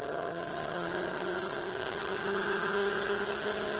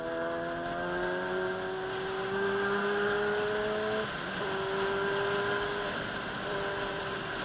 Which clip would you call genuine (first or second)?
second